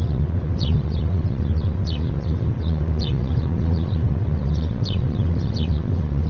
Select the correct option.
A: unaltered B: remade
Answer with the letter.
B